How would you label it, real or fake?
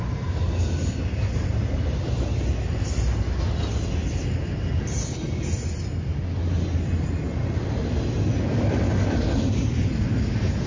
real